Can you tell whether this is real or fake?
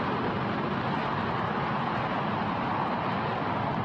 real